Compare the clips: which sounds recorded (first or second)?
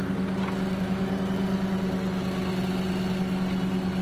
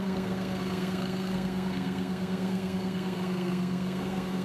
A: first